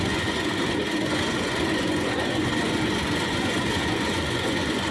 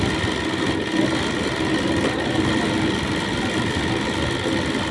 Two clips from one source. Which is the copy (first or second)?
first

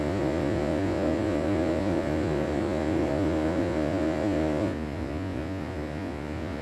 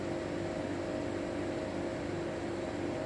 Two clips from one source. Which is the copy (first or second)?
first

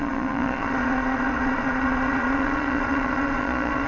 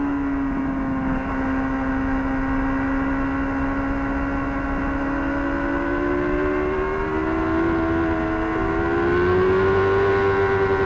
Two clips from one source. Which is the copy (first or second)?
first